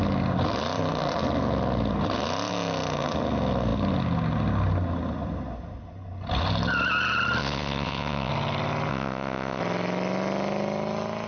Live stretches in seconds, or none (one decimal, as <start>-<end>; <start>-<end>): 0.0-7.4; 8.3-8.9; 9.6-11.3